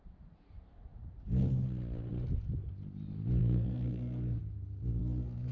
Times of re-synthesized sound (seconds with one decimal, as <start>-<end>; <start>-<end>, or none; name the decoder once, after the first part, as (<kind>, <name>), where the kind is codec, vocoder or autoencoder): 3.4-4.4 (codec, SNAC); 5.0-5.5

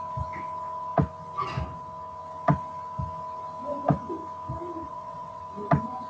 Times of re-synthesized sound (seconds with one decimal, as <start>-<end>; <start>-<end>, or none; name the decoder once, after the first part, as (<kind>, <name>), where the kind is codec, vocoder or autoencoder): 4.9-5.4 (vocoder, WaveNeXt)

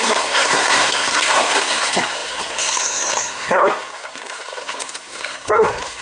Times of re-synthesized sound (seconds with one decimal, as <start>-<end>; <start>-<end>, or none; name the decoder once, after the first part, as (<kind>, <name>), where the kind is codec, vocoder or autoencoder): 0.0-6.0 (codec, SNAC)

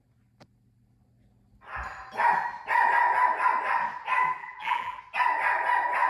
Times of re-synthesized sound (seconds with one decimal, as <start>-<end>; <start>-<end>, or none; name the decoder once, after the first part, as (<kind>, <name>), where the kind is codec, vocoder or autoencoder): 4.4-5.0 (vocoder, BigVGAN v2)